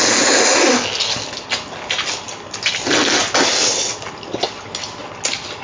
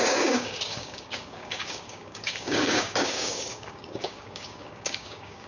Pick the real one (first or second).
first